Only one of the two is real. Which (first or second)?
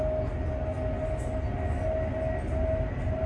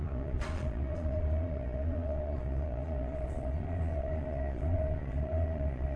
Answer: first